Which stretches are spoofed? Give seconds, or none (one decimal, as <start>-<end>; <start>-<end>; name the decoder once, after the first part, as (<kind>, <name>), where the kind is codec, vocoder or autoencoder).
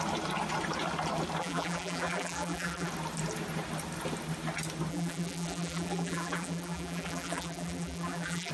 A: 1.4-2.9 (vocoder, BigVGAN v2); 4.9-8.5